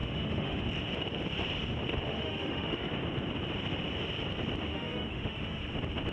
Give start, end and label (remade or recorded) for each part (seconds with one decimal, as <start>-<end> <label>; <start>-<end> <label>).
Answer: 0.0-0.6 remade; 0.6-2.1 recorded; 2.1-2.9 remade; 2.9-4.7 recorded; 4.7-5.6 remade; 5.6-6.1 recorded

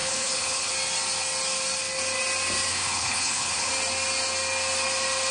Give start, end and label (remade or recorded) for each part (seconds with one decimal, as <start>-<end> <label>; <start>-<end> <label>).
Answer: 0.0-0.7 remade; 0.7-2.7 recorded; 2.7-3.7 remade; 3.7-5.3 recorded